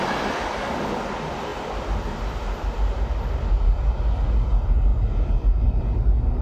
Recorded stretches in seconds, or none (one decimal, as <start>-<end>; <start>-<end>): 0.0-6.4